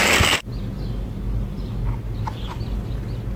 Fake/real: real